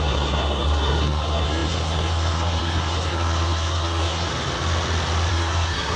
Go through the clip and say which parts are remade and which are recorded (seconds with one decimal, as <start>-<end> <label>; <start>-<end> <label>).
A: 0.0-4.3 remade; 4.3-5.3 recorded; 5.3-6.0 remade